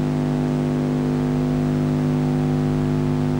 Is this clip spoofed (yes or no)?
no